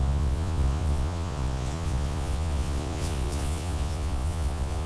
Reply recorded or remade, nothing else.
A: remade